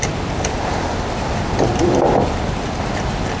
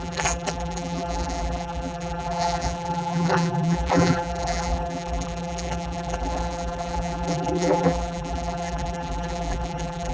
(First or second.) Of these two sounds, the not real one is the second